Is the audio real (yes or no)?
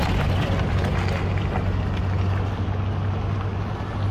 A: yes